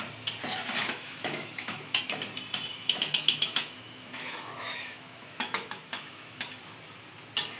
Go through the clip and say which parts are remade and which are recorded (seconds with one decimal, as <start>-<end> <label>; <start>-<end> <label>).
0.0-0.8 recorded; 0.8-2.0 remade; 2.0-2.7 recorded; 2.7-6.4 remade; 6.4-7.6 recorded